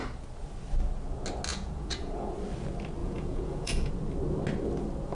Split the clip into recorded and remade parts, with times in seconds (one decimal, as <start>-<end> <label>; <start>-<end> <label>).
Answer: 0.0-1.5 recorded; 1.5-2.3 remade; 2.3-3.0 recorded; 3.0-3.9 remade; 3.9-5.1 recorded